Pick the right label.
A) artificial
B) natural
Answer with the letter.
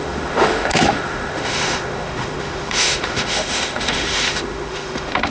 A